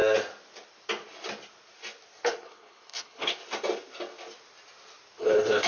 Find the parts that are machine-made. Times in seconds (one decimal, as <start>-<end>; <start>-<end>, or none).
2.3-3.4; 5.2-5.7